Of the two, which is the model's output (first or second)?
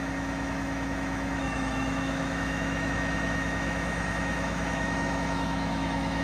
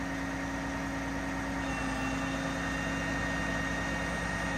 first